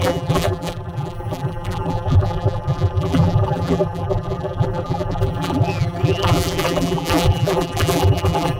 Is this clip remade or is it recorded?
remade